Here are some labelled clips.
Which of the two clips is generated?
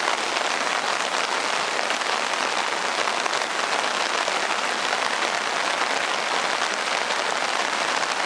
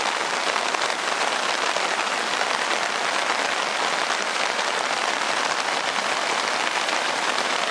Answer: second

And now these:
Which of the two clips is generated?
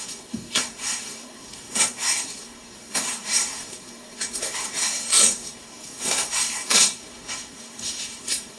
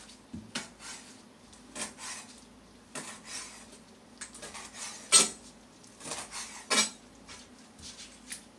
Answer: first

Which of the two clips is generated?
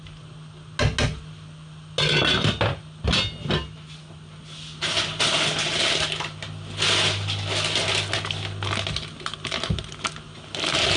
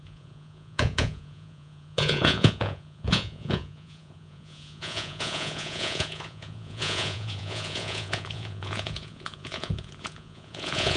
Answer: second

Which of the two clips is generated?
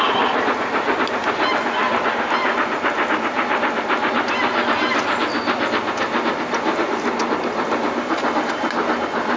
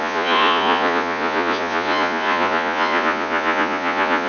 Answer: second